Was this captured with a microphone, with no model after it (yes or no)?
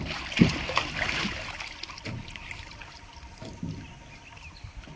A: yes